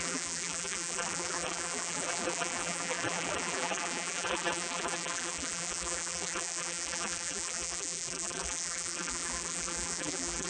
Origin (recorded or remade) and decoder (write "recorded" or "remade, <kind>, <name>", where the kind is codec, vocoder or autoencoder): remade, vocoder, BigVGAN v2